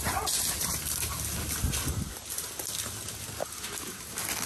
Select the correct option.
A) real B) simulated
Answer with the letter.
A